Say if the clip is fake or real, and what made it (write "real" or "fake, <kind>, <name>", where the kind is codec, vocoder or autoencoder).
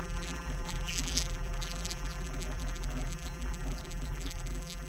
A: fake, vocoder, BigVGAN v2